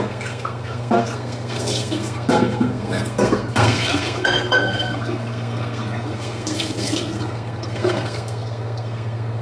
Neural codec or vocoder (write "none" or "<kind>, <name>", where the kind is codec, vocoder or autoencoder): codec, SNAC